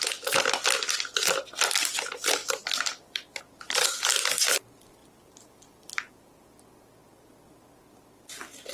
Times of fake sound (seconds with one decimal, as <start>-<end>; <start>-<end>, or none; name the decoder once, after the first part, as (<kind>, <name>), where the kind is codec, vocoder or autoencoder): 2.4-3.4 (vocoder, BigVGAN v2); 5.0-6.6